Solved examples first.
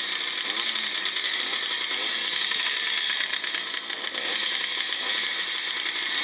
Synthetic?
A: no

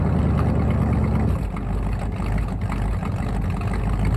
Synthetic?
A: no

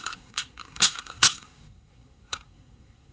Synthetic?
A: yes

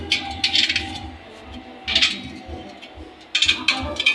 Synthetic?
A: no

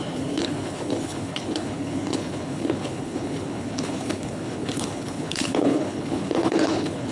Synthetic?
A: yes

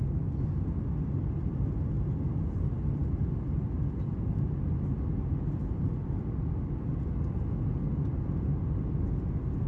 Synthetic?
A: no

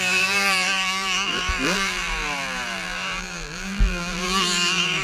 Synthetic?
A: yes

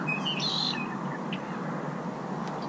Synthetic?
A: no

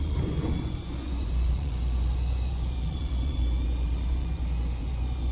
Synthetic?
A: yes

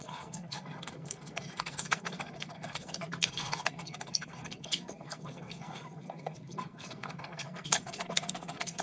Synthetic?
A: yes